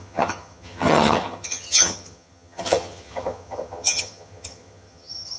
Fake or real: fake